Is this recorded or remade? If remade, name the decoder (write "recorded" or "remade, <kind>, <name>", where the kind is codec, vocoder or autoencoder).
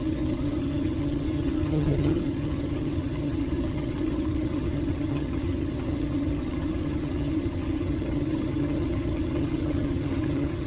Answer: remade, vocoder, HiFi-GAN